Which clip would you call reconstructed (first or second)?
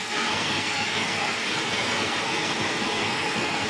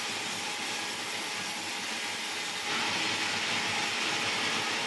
first